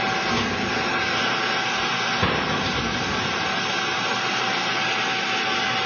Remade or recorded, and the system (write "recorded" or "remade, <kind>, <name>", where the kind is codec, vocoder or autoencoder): recorded